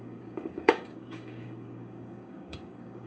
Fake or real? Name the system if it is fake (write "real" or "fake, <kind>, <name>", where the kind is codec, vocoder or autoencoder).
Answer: fake, codec, DAC